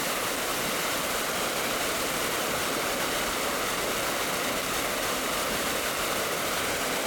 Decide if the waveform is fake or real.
real